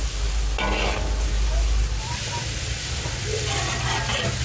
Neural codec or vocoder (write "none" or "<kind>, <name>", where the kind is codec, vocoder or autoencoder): none